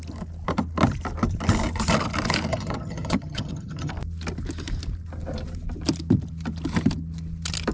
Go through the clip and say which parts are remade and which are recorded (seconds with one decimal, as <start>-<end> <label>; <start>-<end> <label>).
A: 0.0-2.5 recorded; 2.5-3.9 remade; 3.9-7.7 recorded